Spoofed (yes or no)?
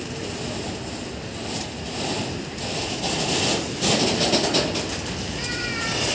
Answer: no